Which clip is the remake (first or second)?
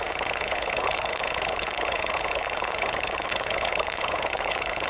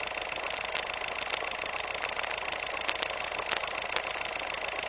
first